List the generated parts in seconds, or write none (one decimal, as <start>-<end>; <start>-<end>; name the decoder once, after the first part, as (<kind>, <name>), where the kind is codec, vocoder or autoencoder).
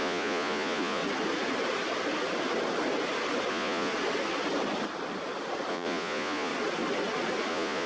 0.0-1.0 (vocoder, Vocos); 3.5-3.9; 5.7-6.5; 7.5-7.9